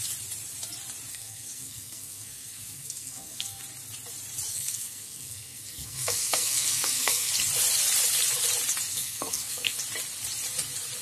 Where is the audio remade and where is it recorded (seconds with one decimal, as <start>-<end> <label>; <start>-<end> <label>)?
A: 0.0-1.1 recorded; 1.1-3.6 remade; 3.6-4.5 recorded; 4.5-7.3 remade; 7.3-8.9 recorded; 8.9-9.8 remade; 9.8-11.0 recorded